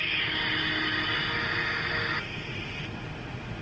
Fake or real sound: real